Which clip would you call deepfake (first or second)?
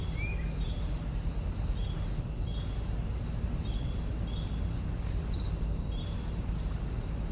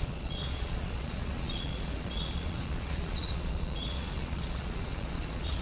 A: second